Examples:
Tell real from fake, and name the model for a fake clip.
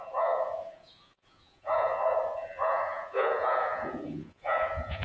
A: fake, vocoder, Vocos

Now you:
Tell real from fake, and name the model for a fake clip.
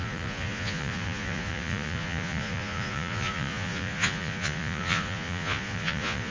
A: fake, vocoder, Vocos